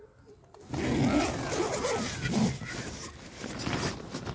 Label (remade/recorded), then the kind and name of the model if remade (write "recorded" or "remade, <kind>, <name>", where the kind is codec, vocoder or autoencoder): recorded